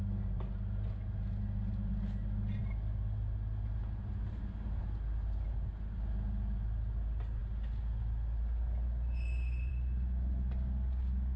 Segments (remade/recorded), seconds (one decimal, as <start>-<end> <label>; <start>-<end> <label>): 0.0-11.4 recorded